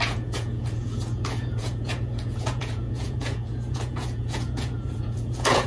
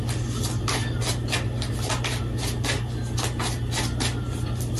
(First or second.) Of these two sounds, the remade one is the first